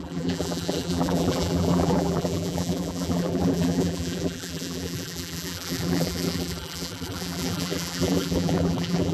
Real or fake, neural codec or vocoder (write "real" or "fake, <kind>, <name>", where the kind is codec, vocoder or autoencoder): fake, vocoder, BigVGAN v2